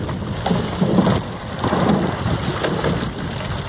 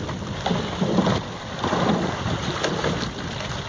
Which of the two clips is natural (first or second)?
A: first